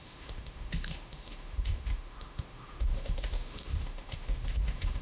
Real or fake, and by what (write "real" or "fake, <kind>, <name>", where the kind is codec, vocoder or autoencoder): fake, autoencoder, DAC-VAE